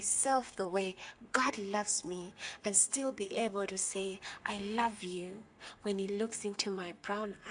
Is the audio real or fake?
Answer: fake